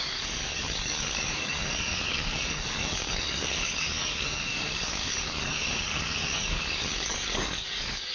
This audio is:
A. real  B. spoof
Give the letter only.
B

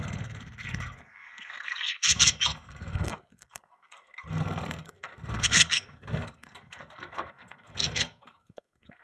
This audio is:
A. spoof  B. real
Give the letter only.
A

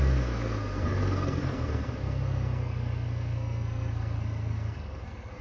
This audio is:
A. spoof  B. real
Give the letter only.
A